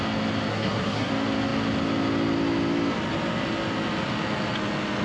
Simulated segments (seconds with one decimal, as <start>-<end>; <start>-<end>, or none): 0.5-1.1